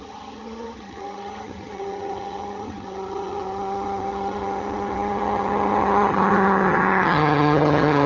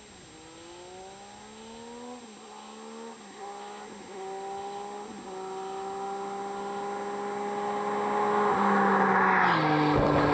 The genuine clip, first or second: second